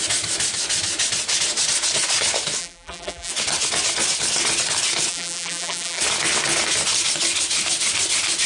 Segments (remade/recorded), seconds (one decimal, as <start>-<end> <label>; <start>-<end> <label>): 0.0-2.6 recorded; 2.6-3.3 remade; 3.3-5.1 recorded; 5.1-6.0 remade; 6.0-8.5 recorded